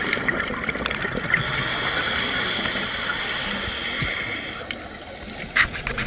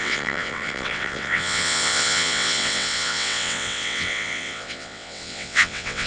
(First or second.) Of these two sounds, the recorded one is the first